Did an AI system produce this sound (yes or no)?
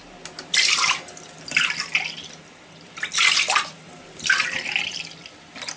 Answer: no